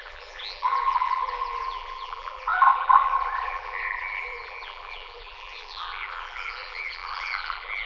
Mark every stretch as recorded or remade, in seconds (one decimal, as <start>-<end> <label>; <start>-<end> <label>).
0.0-7.9 remade

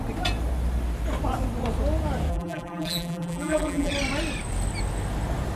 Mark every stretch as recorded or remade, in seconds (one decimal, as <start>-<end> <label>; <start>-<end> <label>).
0.0-2.3 recorded; 2.3-3.9 remade; 3.9-5.6 recorded